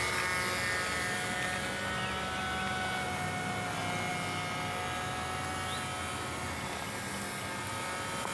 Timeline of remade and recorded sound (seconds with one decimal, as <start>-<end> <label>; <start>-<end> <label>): 0.0-8.3 recorded